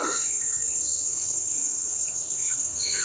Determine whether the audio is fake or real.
fake